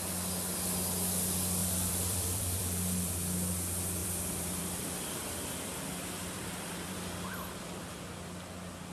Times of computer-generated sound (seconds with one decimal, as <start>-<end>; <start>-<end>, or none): 1.6-3.1; 4.0-7.9